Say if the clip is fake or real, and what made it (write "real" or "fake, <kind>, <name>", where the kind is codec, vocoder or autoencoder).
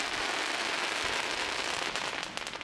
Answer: real